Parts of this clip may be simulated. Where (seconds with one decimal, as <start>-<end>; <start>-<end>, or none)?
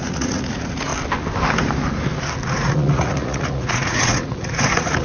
0.0-0.9; 2.5-5.0